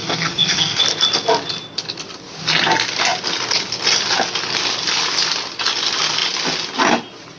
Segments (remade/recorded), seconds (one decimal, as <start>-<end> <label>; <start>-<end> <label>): 0.0-0.8 remade; 0.8-7.4 recorded